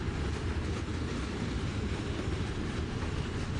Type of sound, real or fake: real